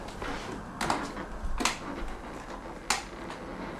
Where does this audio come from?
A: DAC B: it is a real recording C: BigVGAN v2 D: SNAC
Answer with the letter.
B